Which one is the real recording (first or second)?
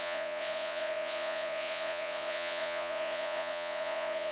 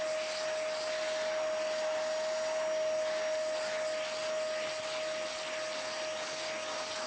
second